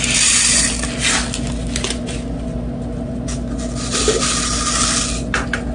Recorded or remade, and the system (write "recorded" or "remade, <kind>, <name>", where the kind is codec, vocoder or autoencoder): recorded